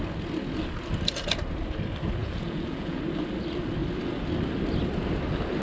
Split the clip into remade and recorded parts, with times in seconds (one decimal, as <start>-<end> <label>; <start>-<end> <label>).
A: 0.0-2.2 recorded; 2.2-3.0 remade; 3.0-5.6 recorded